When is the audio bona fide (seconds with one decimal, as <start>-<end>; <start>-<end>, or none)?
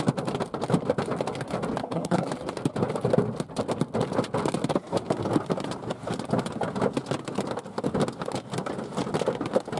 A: 0.0-1.8; 2.3-9.8